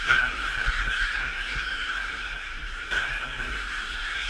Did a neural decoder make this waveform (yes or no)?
yes